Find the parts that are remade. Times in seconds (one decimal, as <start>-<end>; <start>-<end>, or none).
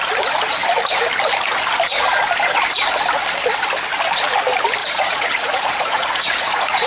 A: 4.8-6.9